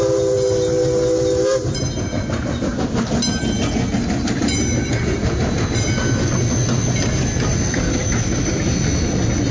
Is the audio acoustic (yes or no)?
yes